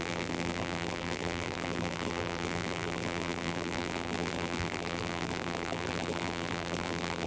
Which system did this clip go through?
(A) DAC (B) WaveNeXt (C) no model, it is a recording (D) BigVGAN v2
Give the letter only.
D